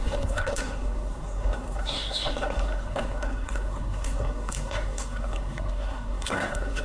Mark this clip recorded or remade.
remade